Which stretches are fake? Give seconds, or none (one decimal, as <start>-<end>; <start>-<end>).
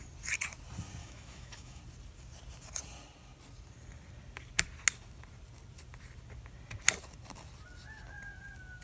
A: 1.0-1.8